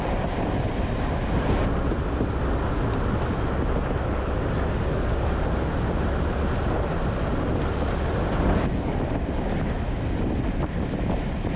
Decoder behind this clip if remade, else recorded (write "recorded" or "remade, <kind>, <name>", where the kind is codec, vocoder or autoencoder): recorded